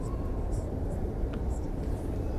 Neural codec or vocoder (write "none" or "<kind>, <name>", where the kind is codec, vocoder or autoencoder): vocoder, BigVGAN v2